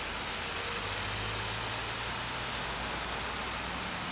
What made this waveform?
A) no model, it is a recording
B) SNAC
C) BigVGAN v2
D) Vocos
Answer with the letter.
A